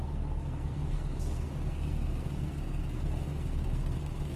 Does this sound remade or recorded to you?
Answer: remade